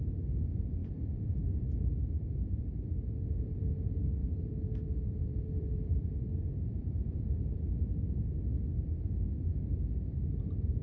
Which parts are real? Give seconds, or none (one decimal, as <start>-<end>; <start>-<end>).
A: 0.0-0.8; 3.7-4.2; 8.5-10.8